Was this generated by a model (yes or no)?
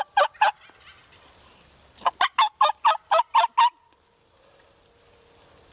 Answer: no